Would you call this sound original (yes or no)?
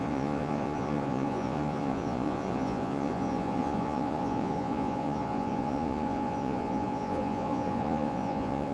no